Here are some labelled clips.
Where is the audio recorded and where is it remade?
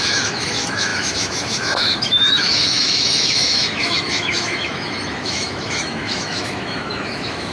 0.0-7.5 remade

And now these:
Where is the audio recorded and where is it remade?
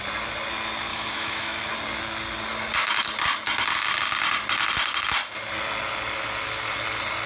0.0-0.9 recorded; 0.9-1.7 remade; 1.7-7.3 recorded